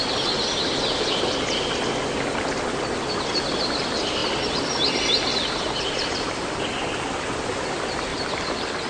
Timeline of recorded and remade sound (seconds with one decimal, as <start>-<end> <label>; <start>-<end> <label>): 0.0-8.1 recorded; 8.1-8.9 remade